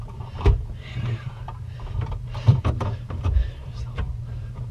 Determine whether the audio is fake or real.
fake